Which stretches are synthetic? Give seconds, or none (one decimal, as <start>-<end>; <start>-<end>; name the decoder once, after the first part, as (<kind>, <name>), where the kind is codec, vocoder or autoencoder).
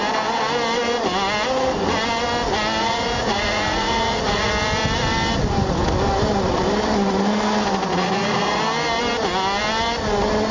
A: 2.8-4.5 (vocoder, Vocos); 7.9-8.6